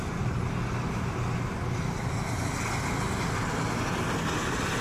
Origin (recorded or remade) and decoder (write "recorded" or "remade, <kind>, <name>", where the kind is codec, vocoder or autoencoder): recorded